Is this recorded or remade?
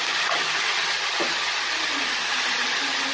recorded